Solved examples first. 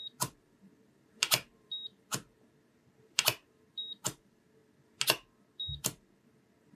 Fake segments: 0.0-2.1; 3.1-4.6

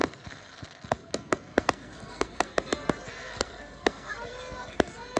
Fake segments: 0.0-5.2

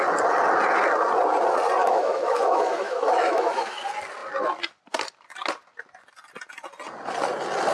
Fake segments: 1.8-3.8